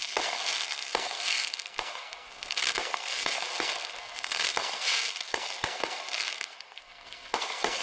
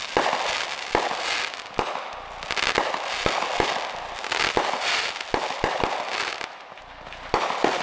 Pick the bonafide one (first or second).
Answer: second